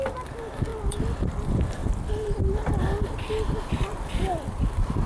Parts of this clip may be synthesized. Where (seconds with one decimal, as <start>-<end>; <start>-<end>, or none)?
0.7-1.4; 1.8-5.1